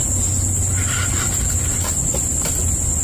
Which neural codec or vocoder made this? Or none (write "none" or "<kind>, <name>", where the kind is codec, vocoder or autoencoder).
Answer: none